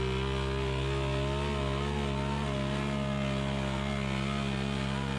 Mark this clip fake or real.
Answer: real